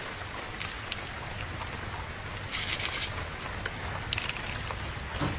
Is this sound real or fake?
real